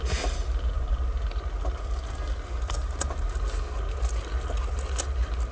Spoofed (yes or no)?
no